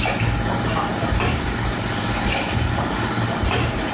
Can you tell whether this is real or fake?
real